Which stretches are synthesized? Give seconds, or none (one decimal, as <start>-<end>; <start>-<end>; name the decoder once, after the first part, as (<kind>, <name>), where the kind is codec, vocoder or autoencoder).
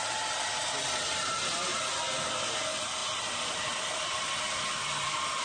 none